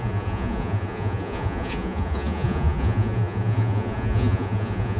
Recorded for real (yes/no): no